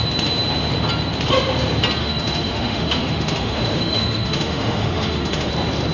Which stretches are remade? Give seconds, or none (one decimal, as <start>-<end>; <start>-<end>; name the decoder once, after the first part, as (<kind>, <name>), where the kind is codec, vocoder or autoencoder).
2.0-5.5 (autoencoder, DAC-VAE)